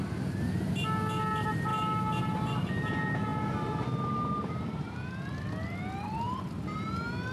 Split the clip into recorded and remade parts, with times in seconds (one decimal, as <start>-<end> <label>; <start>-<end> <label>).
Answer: 0.0-7.3 recorded